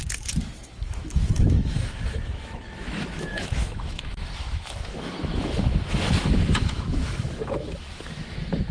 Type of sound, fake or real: fake